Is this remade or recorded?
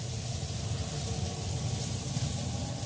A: recorded